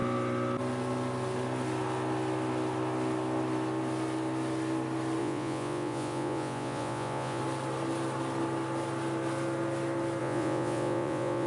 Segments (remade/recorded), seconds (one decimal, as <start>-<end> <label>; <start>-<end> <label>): 0.0-5.2 recorded; 5.2-7.4 remade; 7.4-10.2 recorded; 10.2-11.5 remade